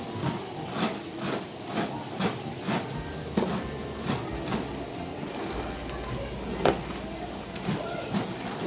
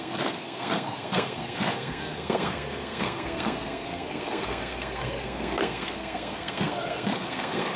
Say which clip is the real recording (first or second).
first